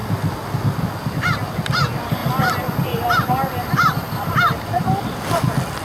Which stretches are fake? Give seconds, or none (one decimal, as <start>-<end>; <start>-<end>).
none